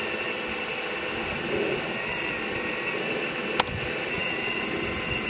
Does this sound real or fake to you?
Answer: real